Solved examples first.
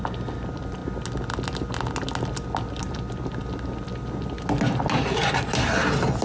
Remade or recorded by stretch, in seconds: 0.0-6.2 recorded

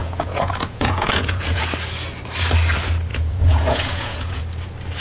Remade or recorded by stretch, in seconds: 0.0-1.6 remade; 1.6-3.1 recorded; 3.1-4.4 remade; 4.4-5.0 recorded

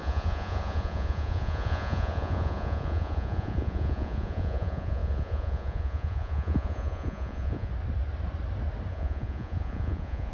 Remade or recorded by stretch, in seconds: 0.0-7.7 remade; 7.7-8.9 recorded; 8.9-10.3 remade

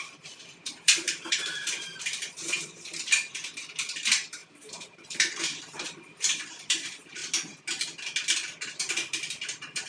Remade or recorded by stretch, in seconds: 0.0-7.2 remade; 7.2-8.7 recorded; 8.7-9.9 remade

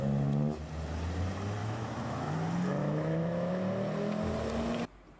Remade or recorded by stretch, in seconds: 0.0-1.6 recorded; 1.6-2.3 remade; 2.3-2.8 recorded; 2.8-3.5 remade; 3.5-5.2 recorded

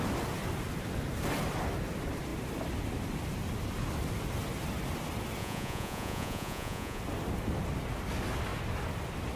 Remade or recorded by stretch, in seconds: 0.0-5.4 recorded; 5.4-7.0 remade; 7.0-9.4 recorded